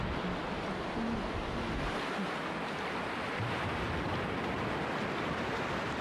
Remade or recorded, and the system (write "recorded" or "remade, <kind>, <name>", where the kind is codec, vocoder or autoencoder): recorded